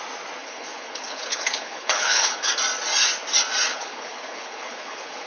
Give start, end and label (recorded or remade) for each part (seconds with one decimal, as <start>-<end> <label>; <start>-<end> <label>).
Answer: 0.0-0.4 recorded; 0.4-2.5 remade; 2.5-3.7 recorded; 3.7-5.3 remade